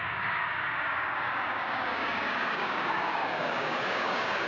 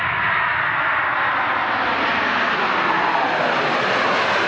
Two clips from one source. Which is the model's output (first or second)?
first